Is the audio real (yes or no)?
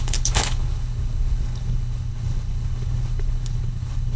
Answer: no